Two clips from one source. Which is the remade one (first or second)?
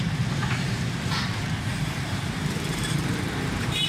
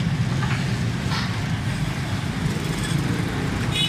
first